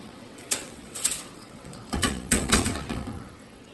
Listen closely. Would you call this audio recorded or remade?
remade